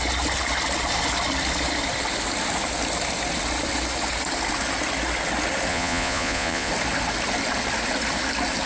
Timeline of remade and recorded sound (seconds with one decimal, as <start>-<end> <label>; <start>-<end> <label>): 0.0-5.7 recorded; 5.7-6.7 remade; 6.7-8.7 recorded